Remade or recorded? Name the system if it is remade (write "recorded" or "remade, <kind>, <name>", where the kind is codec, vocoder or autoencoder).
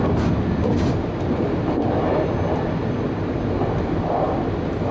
recorded